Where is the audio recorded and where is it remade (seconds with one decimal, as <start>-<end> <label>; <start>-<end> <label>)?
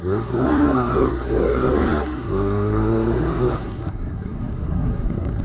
0.0-5.4 remade